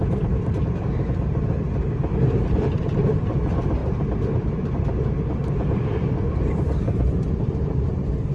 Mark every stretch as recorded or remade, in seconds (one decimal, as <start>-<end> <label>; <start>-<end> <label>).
0.0-8.3 remade